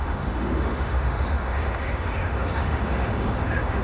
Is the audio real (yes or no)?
no